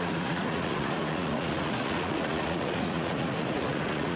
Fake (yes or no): yes